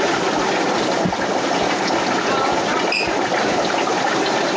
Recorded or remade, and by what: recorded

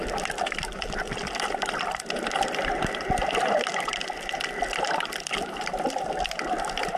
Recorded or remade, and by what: remade, vocoder, BigVGAN v2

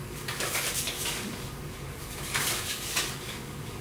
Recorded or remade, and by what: remade, codec, DAC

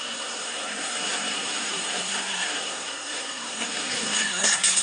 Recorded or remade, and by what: remade, codec, SNAC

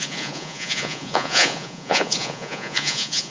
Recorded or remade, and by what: remade, vocoder, Vocos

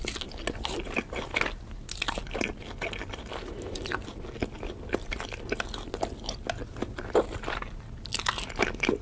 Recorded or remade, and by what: recorded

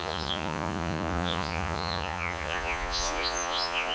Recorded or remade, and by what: remade, vocoder, Vocos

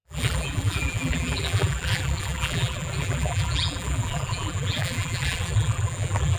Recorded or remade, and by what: remade, vocoder, BigVGAN v2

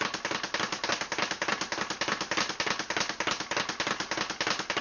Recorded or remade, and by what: recorded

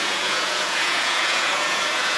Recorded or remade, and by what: remade, vocoder, Vocos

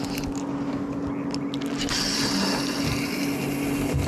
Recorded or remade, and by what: recorded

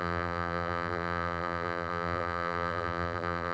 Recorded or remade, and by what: remade, vocoder, BigVGAN v2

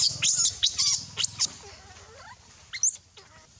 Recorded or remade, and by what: recorded